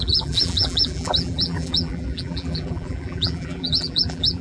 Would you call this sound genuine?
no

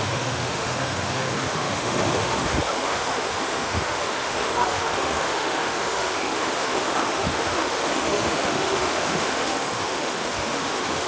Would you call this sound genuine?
no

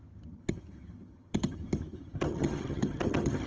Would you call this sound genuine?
no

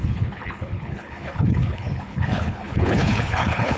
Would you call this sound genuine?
no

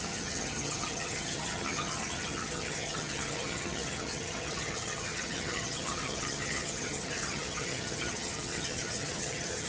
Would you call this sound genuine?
no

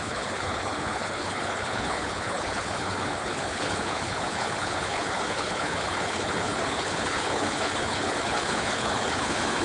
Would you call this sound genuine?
no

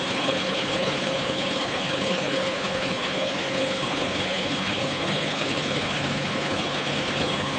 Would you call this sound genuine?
no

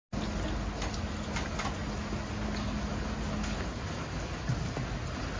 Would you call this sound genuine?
yes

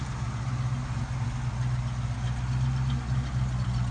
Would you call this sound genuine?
yes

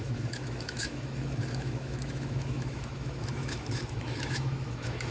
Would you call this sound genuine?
no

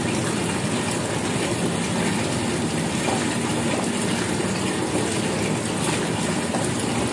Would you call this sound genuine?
yes